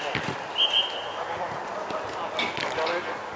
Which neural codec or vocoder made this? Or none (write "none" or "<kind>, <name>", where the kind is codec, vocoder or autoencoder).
none